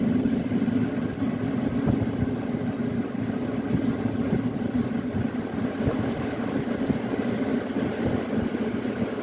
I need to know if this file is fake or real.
real